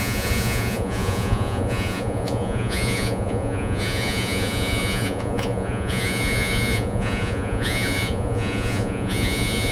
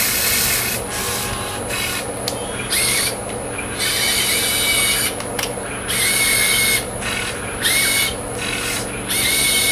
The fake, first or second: first